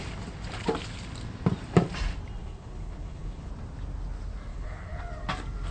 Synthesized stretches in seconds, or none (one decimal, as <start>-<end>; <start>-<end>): 2.4-3.5; 4.5-5.0